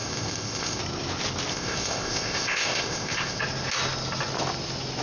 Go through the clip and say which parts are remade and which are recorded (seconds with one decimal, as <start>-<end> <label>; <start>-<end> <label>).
0.0-0.8 remade; 0.8-1.5 recorded; 1.5-3.4 remade; 3.4-5.0 recorded